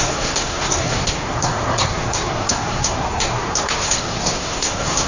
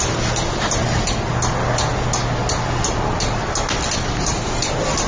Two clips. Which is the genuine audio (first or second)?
second